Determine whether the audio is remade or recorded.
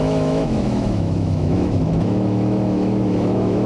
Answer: remade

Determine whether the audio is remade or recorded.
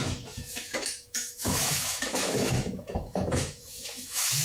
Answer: remade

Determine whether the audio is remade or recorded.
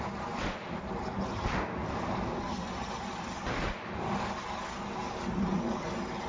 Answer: recorded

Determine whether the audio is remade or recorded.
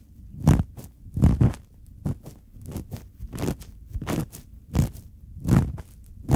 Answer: recorded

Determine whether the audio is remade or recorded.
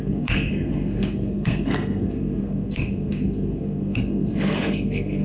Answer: remade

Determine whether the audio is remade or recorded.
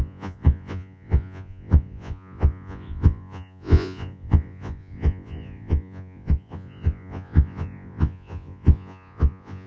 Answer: remade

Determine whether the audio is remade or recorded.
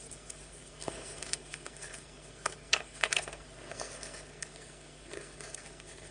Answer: remade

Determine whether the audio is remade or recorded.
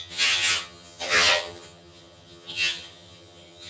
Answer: remade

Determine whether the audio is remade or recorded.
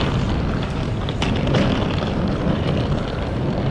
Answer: remade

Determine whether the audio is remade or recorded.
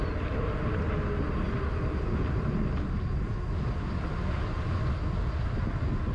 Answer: recorded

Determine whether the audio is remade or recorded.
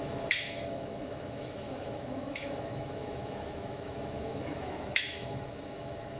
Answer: remade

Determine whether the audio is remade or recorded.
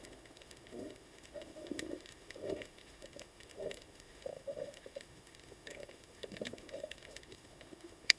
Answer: remade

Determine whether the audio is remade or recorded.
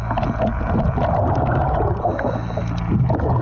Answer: recorded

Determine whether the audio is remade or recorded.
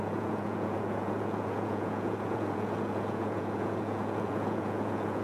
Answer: remade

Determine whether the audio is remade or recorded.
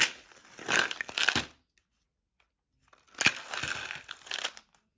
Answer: recorded